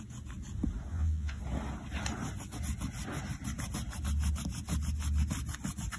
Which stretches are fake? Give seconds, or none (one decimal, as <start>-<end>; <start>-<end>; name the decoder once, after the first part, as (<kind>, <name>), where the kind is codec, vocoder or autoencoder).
0.9-1.4 (vocoder, Vocos)